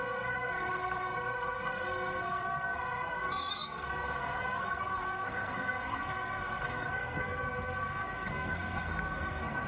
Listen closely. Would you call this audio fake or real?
fake